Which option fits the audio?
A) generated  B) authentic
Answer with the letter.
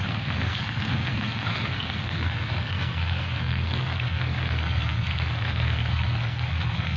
A